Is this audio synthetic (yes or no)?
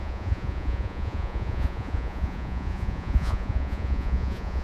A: yes